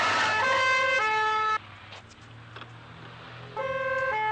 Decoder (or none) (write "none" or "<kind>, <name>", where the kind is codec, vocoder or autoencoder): none